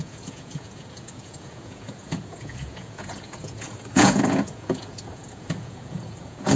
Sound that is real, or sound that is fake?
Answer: fake